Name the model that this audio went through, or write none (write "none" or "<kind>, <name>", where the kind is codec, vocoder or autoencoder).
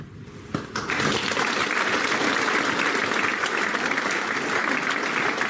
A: none